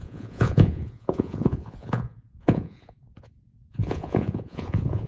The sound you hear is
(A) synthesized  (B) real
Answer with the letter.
A